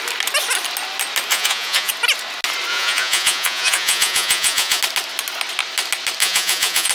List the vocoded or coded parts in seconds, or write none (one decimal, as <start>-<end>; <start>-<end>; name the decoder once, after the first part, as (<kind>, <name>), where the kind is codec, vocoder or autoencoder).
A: 1.3-1.9 (vocoder, Vocos); 2.7-4.8; 6.2-6.9